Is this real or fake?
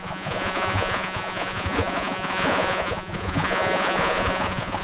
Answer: fake